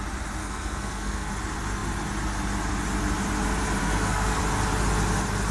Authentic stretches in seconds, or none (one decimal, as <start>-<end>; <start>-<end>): 0.0-0.4; 1.3-3.8; 4.4-5.5